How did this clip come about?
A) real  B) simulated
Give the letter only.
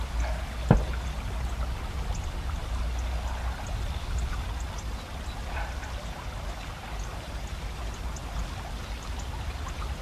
A